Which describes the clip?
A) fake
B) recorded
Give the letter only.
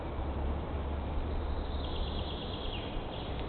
B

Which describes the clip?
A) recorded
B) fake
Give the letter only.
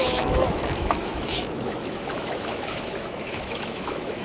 B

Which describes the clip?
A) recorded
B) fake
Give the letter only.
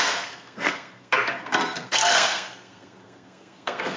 B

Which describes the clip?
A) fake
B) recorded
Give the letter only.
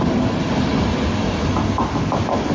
B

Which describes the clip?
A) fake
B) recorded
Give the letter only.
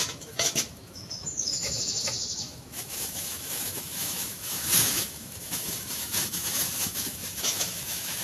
A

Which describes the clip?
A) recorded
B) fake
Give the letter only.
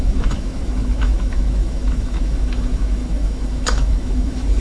B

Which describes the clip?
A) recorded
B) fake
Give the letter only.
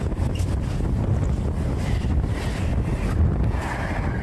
A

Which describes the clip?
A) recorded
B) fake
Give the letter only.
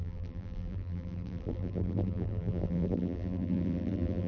B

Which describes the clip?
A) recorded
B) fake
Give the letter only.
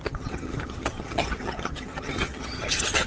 B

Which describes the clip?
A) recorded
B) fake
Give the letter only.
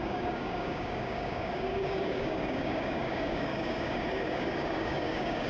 B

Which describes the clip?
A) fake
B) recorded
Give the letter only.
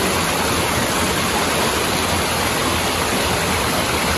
B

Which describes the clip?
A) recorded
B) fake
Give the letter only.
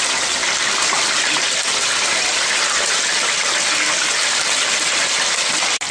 A